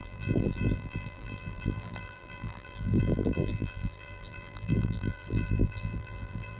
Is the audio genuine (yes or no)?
no